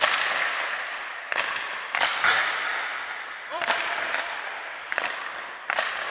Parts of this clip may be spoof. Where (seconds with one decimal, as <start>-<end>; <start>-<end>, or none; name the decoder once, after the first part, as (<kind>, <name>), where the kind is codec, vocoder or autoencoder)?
2.7-5.2 (vocoder, BigVGAN v2)